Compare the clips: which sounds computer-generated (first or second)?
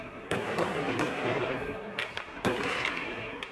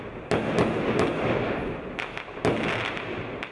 first